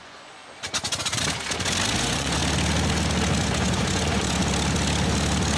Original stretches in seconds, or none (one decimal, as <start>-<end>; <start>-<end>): 0.4-2.0; 2.4-3.4; 4.4-5.6